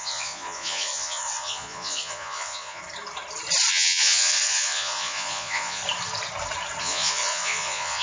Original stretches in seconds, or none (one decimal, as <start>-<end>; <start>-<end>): 2.8-3.7; 5.8-6.8